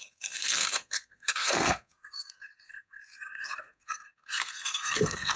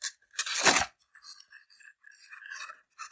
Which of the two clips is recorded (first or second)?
second